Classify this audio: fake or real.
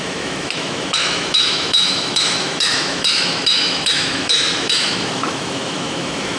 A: fake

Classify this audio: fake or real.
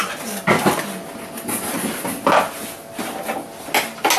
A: real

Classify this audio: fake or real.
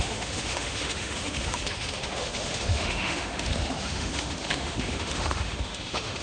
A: fake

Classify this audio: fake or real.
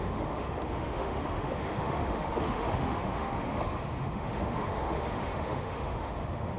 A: fake